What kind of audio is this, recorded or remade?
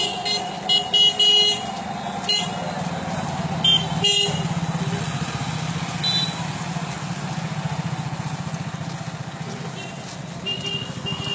recorded